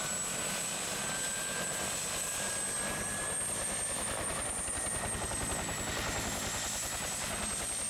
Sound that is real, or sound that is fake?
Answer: real